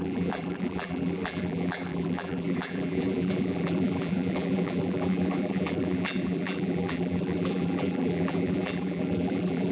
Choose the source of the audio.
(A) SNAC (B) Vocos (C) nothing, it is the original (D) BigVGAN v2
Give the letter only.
D